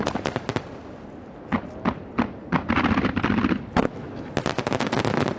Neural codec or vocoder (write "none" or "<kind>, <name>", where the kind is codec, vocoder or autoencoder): none